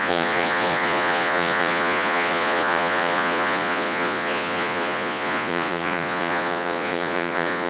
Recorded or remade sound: remade